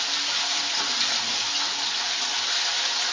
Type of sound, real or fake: real